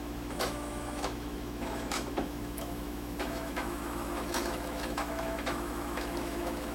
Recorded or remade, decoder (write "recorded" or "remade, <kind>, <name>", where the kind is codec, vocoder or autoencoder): remade, autoencoder, DAC-VAE